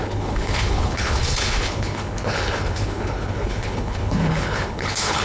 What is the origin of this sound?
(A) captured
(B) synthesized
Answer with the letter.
B